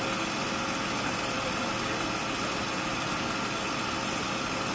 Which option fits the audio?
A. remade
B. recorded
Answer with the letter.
B